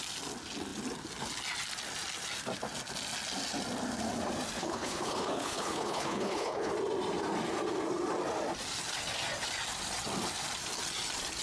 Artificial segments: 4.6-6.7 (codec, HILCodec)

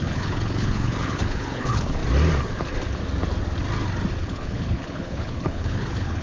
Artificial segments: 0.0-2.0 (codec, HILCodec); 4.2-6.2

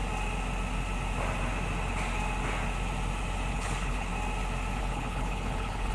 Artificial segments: 3.5-4.1 (codec, HILCodec); 4.8-5.9

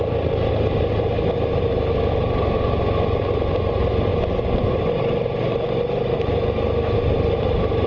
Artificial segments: none